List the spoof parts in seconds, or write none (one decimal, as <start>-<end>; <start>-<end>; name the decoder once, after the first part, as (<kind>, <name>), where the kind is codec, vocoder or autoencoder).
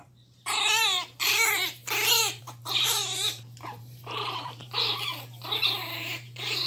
0.0-1.8 (vocoder, BigVGAN v2); 2.4-5.1; 5.6-6.7